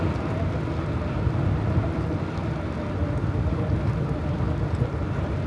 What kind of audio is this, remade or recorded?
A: recorded